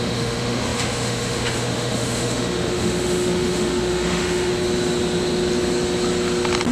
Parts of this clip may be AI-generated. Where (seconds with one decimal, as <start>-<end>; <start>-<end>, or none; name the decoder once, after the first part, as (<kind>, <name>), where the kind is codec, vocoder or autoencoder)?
0.0-4.5 (autoencoder, DAC-VAE)

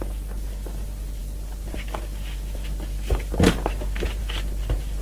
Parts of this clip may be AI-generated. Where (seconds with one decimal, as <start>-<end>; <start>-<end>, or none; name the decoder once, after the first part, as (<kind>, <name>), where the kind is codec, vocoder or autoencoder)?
none

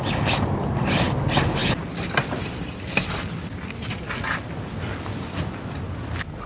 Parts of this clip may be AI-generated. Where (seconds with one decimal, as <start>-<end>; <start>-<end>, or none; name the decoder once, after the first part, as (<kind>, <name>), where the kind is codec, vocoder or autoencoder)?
1.6-5.5 (vocoder, BigVGAN v2)

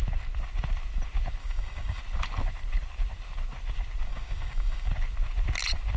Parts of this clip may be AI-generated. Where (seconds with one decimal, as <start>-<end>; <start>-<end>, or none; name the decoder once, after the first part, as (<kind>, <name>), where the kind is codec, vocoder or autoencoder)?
1.4-2.0 (codec, DAC); 4.1-4.9

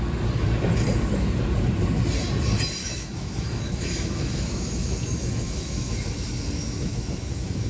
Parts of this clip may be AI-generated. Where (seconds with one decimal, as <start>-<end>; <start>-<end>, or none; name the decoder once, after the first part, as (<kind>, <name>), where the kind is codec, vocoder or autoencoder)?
2.8-7.7 (autoencoder, DAC-VAE)